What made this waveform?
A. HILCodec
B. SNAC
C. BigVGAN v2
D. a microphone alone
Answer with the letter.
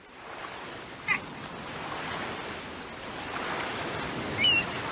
D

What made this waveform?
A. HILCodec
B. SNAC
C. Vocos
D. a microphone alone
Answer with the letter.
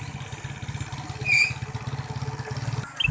D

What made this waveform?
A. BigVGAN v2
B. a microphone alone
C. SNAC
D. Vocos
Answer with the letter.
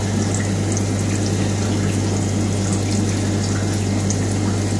B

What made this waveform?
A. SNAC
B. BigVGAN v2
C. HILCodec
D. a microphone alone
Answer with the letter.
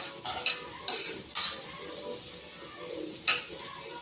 D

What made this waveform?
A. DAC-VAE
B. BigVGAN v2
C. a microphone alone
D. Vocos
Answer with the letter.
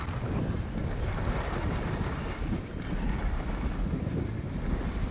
C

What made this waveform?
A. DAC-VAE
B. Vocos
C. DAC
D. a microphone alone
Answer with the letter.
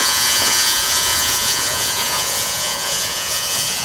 B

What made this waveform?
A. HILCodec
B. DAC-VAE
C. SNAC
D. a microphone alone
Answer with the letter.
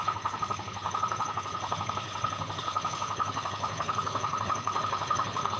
A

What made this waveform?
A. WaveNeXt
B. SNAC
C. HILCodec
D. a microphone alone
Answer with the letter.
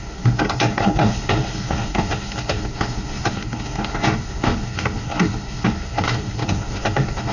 B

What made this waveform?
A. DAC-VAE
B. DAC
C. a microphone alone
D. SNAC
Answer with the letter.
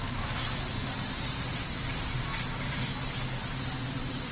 C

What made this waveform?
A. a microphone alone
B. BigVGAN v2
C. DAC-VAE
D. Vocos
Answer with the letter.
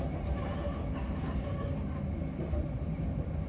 A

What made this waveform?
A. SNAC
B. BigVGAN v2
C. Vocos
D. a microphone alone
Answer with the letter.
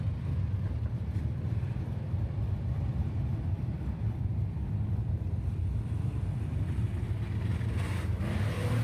B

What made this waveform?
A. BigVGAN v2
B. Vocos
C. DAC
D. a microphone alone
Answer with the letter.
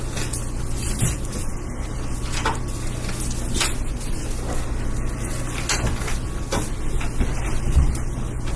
D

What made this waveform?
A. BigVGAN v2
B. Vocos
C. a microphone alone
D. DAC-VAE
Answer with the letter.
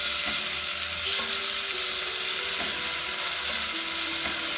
C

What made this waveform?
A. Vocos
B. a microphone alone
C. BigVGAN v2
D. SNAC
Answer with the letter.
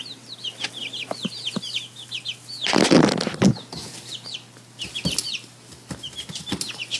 B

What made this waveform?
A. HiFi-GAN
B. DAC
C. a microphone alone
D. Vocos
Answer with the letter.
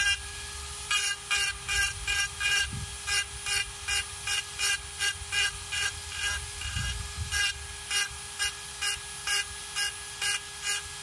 C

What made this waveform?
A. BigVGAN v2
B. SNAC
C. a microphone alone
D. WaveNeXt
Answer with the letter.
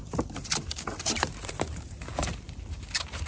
A